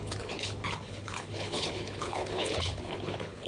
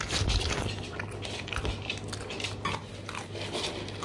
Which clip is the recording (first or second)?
second